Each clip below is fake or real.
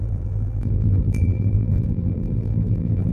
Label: fake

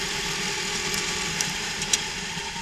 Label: fake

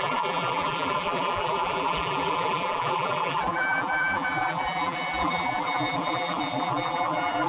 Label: fake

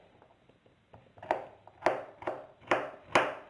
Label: real